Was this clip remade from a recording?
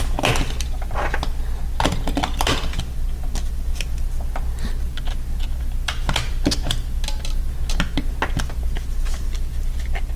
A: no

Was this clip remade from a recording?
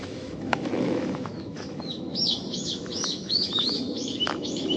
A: yes